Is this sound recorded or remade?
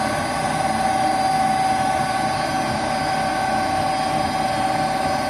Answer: recorded